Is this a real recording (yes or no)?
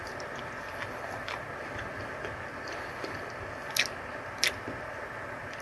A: yes